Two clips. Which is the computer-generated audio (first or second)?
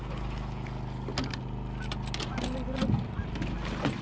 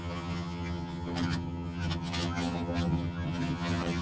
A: second